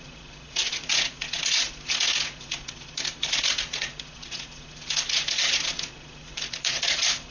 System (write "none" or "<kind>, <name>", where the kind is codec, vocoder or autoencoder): vocoder, Vocos